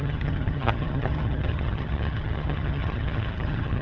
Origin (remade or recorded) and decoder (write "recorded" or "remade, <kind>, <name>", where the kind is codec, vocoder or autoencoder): remade, vocoder, HiFi-GAN